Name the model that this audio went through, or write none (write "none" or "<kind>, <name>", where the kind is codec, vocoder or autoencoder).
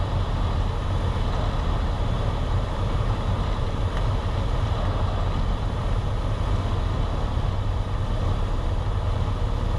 none